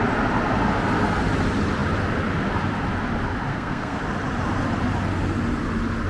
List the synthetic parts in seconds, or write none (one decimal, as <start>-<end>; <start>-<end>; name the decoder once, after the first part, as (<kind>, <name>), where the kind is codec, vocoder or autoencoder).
3.5-4.0 (codec, SNAC)